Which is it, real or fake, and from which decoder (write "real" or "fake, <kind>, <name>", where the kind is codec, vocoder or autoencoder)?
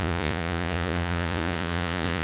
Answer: fake, vocoder, Vocos